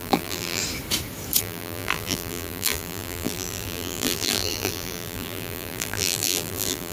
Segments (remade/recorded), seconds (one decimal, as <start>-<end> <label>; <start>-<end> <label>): 0.0-0.6 remade; 0.6-1.4 recorded; 1.4-6.9 remade